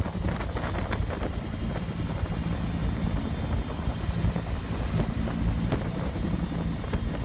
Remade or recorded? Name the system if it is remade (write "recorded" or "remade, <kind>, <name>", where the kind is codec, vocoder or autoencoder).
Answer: recorded